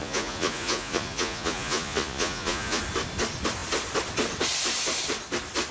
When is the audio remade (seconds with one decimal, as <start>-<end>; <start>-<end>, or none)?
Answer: 0.0-2.8